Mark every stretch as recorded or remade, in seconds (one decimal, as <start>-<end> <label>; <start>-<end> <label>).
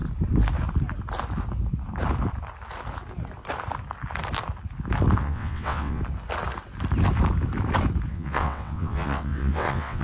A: 0.0-5.2 recorded; 5.2-6.0 remade; 6.0-8.1 recorded; 8.1-10.0 remade